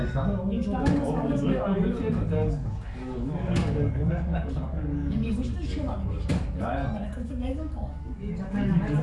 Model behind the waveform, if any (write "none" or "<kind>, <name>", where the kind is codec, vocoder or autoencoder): codec, DAC